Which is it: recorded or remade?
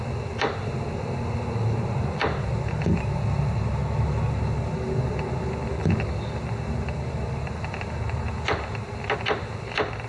recorded